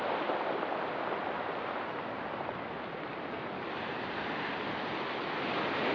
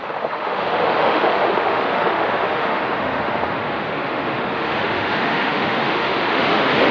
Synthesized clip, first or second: second